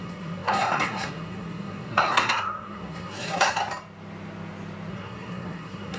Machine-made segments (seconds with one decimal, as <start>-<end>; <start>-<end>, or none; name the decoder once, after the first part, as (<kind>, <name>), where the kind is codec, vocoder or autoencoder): 0.0-3.6 (codec, SNAC); 4.9-6.0

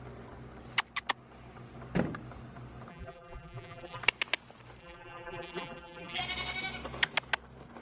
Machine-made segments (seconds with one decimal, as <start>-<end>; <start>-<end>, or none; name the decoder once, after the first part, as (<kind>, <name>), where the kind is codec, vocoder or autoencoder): 2.9-4.0 (vocoder, BigVGAN v2); 4.8-6.2

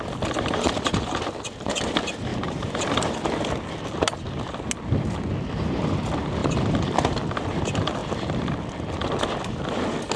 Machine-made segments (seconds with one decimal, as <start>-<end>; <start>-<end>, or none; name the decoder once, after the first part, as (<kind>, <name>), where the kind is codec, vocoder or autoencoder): 2.3-2.8 (vocoder, BigVGAN v2)

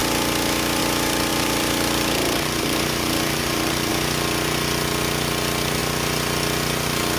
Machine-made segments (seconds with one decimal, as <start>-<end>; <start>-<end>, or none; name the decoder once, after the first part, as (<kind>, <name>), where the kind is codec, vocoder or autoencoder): 1.3-3.9 (vocoder, BigVGAN v2)

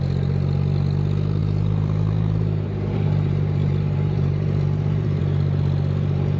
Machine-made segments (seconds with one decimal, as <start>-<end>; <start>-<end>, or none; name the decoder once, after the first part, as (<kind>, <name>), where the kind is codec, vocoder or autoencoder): 1.4-5.2 (vocoder, BigVGAN v2)

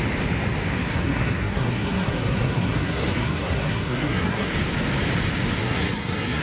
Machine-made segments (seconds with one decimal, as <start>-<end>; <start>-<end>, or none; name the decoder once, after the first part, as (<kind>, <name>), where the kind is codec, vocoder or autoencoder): 0.7-4.5 (codec, SNAC); 5.6-6.4

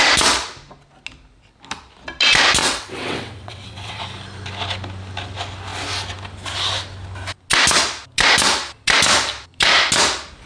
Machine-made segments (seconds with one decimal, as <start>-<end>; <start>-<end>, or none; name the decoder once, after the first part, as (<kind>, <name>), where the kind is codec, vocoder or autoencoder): 2.6-4.0 (vocoder, WaveNeXt)